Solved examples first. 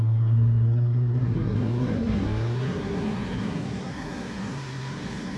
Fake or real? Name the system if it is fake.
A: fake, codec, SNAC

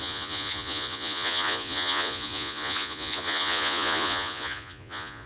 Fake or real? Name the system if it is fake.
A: fake, vocoder, Vocos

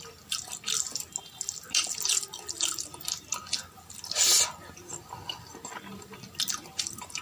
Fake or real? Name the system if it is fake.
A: real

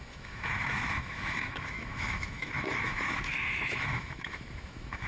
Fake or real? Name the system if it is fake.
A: fake, autoencoder, DAC-VAE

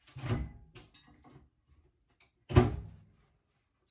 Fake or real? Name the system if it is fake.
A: real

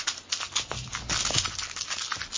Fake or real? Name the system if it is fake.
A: real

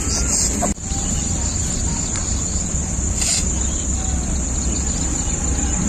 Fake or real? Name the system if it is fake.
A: real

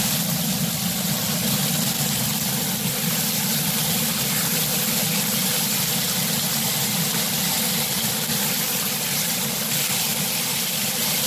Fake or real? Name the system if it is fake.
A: real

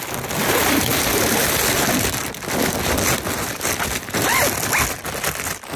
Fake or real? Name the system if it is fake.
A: real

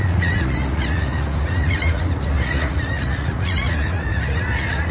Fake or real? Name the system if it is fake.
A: fake, vocoder, Vocos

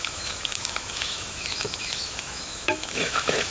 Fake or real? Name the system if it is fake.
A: fake, autoencoder, DAC-VAE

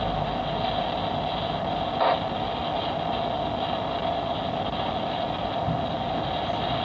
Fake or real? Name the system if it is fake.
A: real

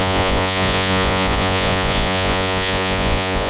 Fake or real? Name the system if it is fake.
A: fake, vocoder, Vocos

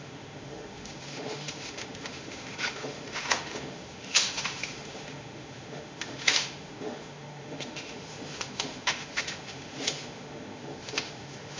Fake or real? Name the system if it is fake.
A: fake, autoencoder, DAC-VAE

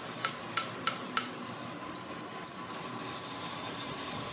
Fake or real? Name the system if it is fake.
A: real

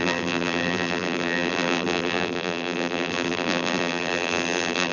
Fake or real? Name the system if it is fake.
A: fake, vocoder, BigVGAN v2